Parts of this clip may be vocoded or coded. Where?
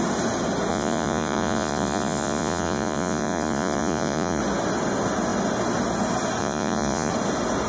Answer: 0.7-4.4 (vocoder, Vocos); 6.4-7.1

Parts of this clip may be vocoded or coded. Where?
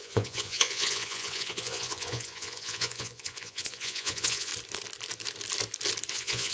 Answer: 0.0-4.5 (vocoder, Vocos); 6.1-6.5